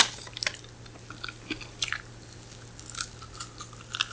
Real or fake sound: real